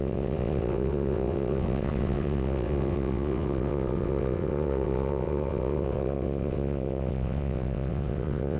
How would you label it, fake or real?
fake